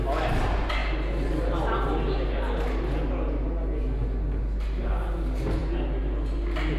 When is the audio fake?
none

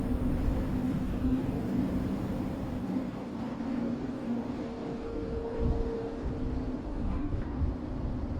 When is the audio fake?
0.8-1.9 (codec, DAC); 2.8-6.3; 6.9-7.6

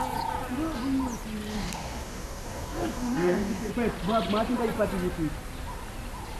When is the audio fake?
1.5-3.7 (codec, DAC)

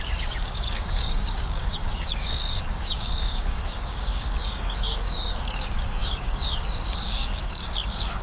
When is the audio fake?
0.0-8.2 (codec, DAC)

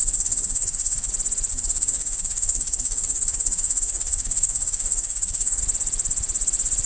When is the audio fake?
0.0-1.1 (codec, DAC); 1.5-5.6